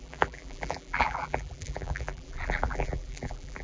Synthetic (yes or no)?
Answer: yes